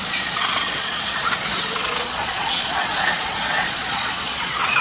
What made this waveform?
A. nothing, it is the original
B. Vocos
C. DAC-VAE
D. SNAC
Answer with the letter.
B